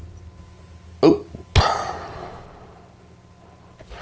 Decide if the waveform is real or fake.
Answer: real